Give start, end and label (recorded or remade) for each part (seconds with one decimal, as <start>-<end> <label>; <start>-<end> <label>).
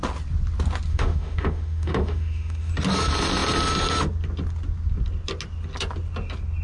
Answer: 0.0-0.9 recorded; 0.9-2.7 remade; 2.7-6.6 recorded